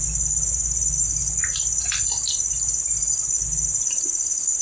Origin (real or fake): real